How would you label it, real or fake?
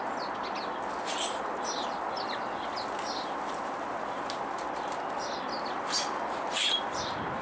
real